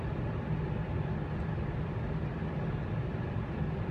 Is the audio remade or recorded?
remade